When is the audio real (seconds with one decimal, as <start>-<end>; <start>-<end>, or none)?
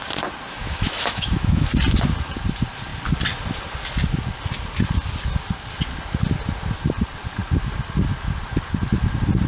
0.0-0.6; 1.7-9.5